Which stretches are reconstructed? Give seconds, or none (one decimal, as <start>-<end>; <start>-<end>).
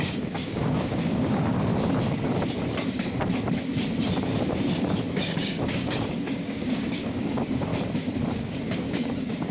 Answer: 0.0-1.7; 5.2-7.7; 8.4-9.5